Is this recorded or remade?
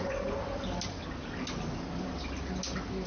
recorded